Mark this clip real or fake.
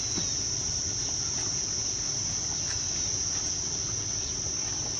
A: real